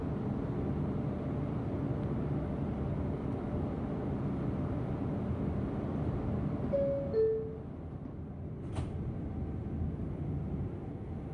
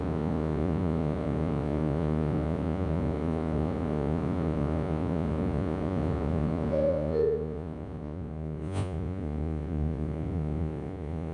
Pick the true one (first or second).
first